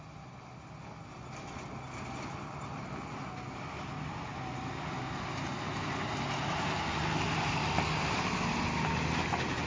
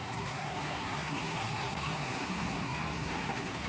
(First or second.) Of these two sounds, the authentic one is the first